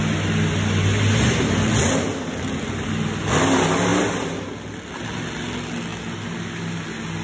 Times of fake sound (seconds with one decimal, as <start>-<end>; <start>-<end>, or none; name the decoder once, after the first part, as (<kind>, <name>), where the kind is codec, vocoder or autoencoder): none